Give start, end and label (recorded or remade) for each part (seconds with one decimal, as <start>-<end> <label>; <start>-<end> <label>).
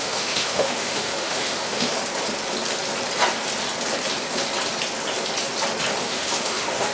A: 0.0-1.9 remade; 1.9-6.0 recorded; 6.0-6.9 remade